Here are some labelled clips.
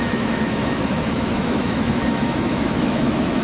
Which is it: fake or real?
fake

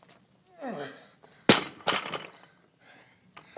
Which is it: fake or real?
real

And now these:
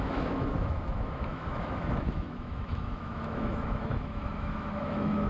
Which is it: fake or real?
fake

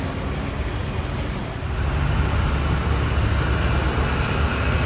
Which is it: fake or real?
real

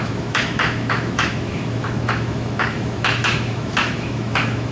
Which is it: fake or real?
fake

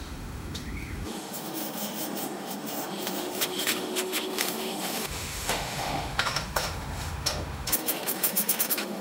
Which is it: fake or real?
fake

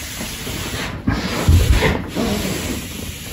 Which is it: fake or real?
real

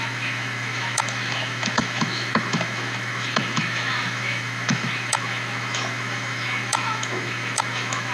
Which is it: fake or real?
fake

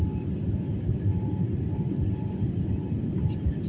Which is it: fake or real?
real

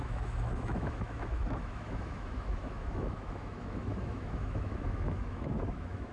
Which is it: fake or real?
fake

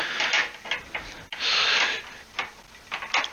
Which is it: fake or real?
real